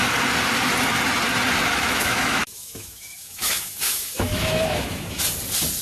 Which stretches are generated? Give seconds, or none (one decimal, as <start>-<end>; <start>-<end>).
1.7-5.2